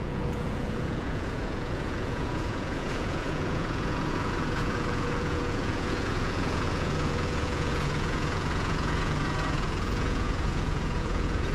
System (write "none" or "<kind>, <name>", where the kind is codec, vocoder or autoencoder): vocoder, Vocos